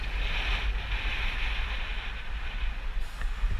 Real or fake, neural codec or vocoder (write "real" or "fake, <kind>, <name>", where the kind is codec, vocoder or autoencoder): real